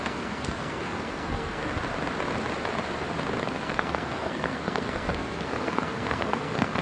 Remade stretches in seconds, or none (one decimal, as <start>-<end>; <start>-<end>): 0.0-1.6; 3.4-6.8